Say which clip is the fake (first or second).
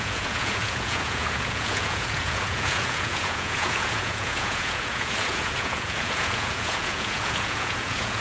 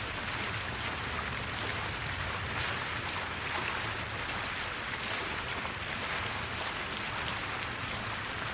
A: first